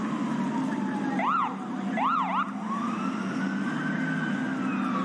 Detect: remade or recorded recorded